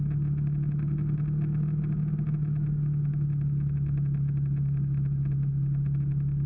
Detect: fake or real real